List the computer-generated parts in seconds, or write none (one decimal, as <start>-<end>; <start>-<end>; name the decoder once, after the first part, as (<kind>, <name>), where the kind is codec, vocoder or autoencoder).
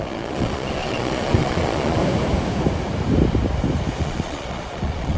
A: 0.0-2.0 (vocoder, Vocos); 4.0-5.2